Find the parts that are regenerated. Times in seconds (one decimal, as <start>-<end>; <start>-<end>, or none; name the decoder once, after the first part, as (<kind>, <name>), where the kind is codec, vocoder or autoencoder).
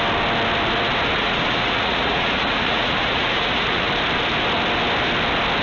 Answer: 1.2-3.9 (vocoder, Vocos)